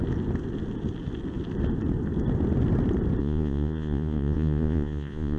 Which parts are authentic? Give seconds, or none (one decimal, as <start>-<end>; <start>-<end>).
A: 0.0-3.2